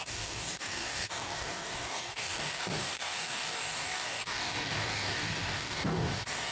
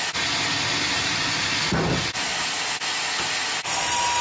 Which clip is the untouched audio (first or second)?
second